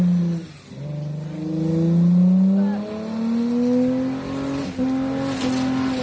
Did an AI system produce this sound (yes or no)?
no